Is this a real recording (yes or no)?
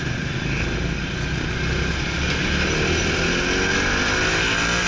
yes